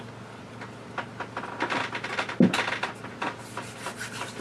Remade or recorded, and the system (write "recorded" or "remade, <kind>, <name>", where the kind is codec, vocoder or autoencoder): recorded